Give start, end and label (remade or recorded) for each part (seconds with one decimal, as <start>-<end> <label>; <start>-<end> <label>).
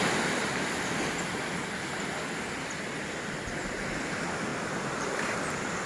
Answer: 0.0-5.9 recorded